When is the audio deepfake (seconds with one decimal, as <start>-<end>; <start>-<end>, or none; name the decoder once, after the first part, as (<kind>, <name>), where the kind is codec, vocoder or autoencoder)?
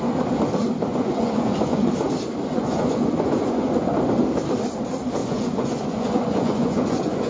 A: 0.9-1.9 (vocoder, Vocos); 2.5-3.9; 5.2-7.3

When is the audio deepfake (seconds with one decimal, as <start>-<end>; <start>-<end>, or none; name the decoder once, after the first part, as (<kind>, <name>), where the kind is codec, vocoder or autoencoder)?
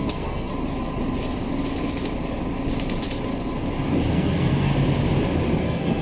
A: 0.0-0.5 (codec, SNAC); 4.1-4.7; 5.6-6.0